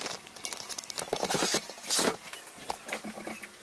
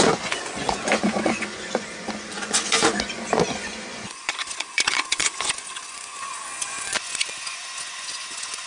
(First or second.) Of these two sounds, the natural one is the first